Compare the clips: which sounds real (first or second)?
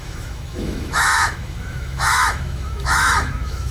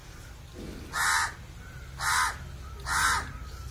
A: second